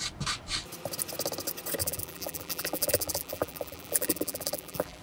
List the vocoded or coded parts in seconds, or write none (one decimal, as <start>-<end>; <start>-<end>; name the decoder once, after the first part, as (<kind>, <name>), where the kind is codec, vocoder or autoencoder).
1.8-5.0 (vocoder, BigVGAN v2)